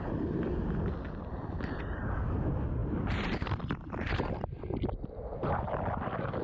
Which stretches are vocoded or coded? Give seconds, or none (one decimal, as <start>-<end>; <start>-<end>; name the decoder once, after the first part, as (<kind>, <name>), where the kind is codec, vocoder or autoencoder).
2.8-4.6 (vocoder, BigVGAN v2); 5.4-6.4